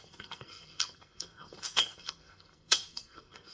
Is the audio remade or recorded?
remade